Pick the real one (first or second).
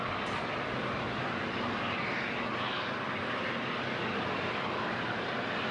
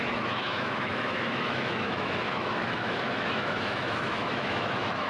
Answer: first